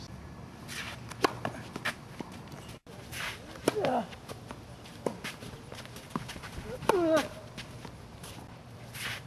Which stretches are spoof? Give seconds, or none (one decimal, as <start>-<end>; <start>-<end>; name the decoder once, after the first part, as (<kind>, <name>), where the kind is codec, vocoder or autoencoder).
none